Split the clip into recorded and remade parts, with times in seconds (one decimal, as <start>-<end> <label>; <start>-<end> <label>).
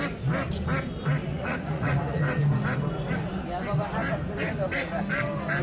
0.0-1.3 recorded; 1.3-2.2 remade; 2.2-5.6 recorded